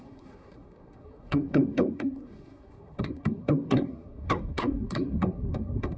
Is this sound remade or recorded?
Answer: remade